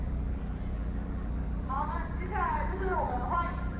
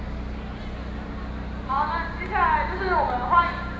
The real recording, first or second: second